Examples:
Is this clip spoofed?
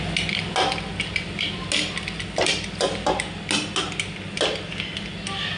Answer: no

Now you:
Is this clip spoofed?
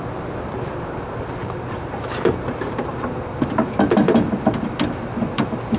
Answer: yes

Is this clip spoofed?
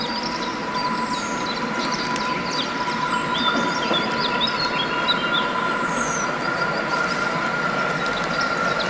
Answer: no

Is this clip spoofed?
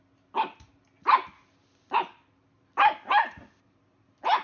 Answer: no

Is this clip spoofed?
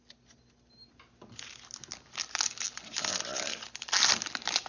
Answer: no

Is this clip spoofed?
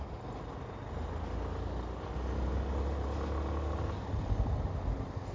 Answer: no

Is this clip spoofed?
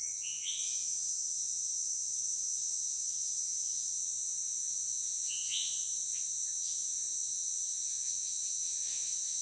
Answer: yes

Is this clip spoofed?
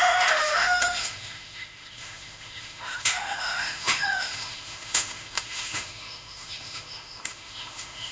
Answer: yes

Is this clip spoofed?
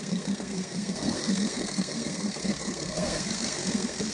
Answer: yes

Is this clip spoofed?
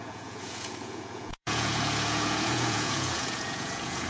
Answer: yes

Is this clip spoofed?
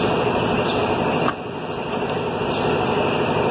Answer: no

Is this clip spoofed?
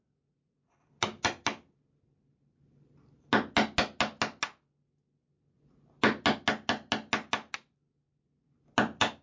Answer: no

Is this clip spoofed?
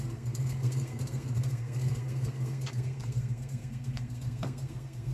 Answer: yes